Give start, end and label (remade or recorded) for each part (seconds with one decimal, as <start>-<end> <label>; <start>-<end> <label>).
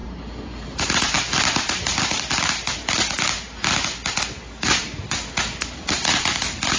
0.0-6.8 recorded